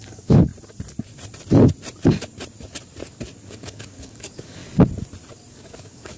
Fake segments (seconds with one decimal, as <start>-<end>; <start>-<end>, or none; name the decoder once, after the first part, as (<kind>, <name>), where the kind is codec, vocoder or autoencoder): 0.0-0.5 (codec, DAC); 3.5-4.6; 5.5-6.2